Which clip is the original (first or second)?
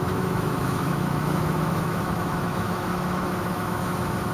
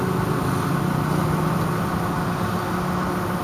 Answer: second